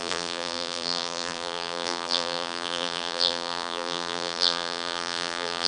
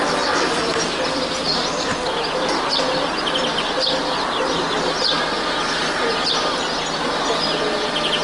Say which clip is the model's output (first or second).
first